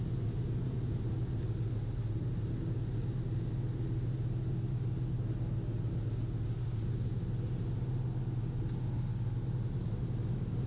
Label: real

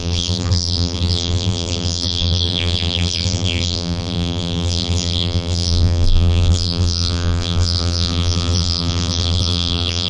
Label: fake